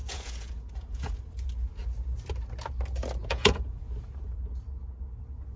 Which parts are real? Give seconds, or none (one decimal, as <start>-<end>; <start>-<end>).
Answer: 1.2-3.2; 3.8-5.6